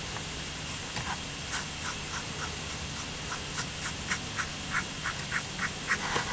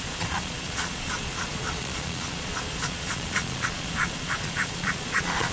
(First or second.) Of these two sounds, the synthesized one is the second